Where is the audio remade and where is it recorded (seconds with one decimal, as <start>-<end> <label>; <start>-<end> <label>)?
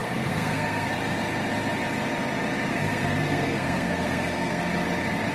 0.0-0.9 remade; 0.9-2.7 recorded; 2.7-4.6 remade; 4.6-5.3 recorded